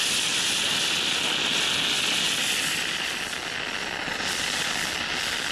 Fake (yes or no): no